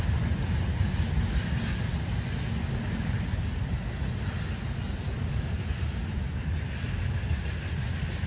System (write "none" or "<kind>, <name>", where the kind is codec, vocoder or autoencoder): none